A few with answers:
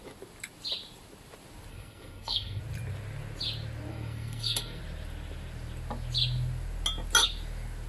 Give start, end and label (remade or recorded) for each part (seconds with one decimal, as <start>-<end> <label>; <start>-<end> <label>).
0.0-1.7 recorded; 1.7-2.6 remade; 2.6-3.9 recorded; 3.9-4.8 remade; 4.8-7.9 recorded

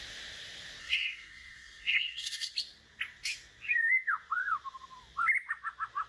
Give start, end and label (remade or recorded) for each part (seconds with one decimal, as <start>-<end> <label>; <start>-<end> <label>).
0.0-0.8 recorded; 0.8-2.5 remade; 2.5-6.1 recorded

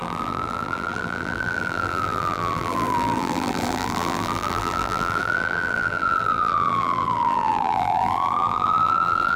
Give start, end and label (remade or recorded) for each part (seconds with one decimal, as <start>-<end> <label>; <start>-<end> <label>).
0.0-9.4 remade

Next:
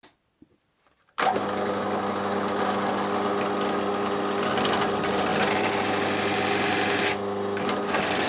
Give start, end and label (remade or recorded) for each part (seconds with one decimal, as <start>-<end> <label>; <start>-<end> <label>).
0.0-8.3 recorded

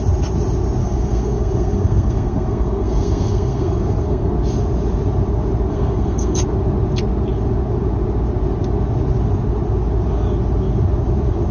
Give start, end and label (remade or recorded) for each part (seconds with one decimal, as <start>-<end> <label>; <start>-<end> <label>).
0.0-0.8 recorded; 0.8-4.3 remade; 4.3-5.7 recorded; 5.7-6.4 remade; 6.4-11.5 recorded

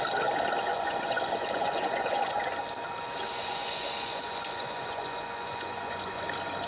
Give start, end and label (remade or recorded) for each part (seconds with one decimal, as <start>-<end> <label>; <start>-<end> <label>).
0.0-0.7 recorded; 0.7-2.4 remade; 2.4-3.3 recorded; 3.3-6.2 remade; 6.2-6.7 recorded

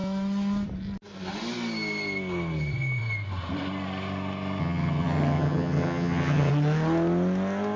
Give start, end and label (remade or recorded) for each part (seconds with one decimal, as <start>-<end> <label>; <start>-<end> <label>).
0.0-4.6 recorded; 4.6-6.5 remade; 6.5-7.8 recorded

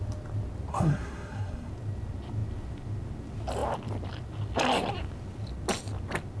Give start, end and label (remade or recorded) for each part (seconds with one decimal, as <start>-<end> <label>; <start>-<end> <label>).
0.0-0.7 recorded; 0.7-1.7 remade; 1.7-6.4 recorded